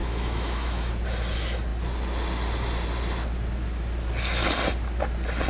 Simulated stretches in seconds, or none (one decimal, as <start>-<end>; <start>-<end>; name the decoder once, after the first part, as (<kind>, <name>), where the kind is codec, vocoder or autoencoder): 0.0-0.9 (autoencoder, DAC-VAE)